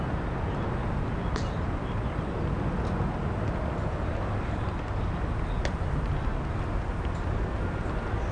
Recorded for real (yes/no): yes